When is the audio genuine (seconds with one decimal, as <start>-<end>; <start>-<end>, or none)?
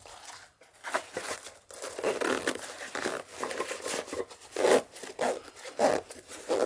0.0-6.7